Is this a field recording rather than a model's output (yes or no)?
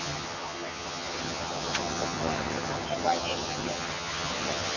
no